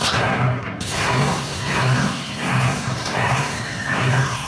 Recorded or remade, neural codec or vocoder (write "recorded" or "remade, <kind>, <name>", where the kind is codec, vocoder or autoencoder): remade, codec, SNAC